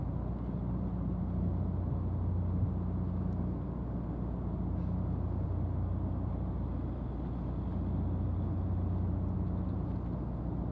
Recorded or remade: recorded